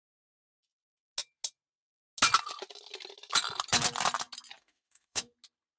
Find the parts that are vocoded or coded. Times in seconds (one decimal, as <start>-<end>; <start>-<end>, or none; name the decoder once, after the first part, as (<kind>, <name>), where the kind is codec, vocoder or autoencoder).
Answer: 4.6-5.3 (autoencoder, DAC-VAE)